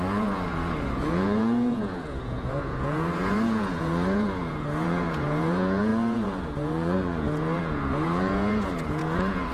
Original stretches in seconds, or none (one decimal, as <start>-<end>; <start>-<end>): none

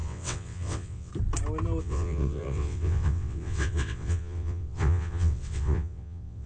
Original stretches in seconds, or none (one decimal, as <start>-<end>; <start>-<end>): 1.1-1.8

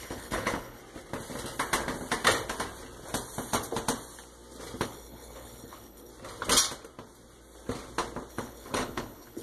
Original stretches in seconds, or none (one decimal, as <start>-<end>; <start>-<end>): 0.8-4.8; 6.1-8.3